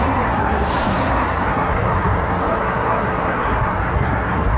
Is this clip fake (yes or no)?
yes